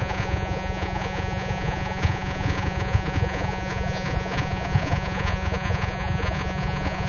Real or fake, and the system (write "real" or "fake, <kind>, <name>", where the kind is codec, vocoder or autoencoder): fake, vocoder, Vocos